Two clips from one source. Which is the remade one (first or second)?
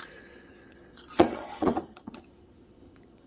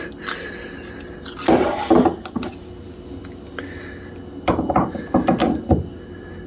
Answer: first